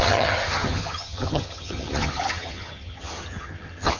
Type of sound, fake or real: fake